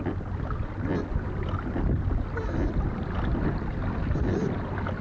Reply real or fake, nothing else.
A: real